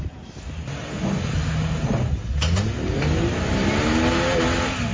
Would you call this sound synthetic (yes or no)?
no